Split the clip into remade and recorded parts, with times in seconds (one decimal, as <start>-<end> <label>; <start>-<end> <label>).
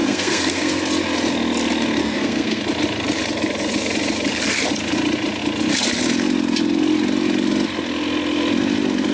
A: 0.0-0.8 remade; 0.8-2.0 recorded; 2.0-2.6 remade; 2.6-9.1 recorded